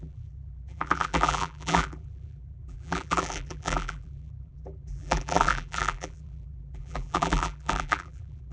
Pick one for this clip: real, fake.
fake